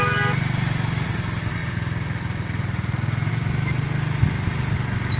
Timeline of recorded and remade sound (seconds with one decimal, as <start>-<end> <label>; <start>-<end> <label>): 0.0-5.2 recorded